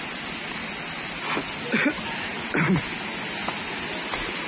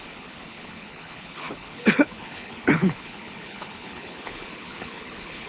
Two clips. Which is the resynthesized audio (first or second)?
second